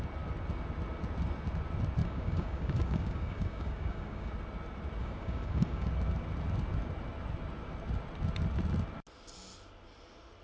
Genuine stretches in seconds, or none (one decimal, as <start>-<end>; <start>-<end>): 0.0-2.0; 4.3-5.0; 5.9-10.4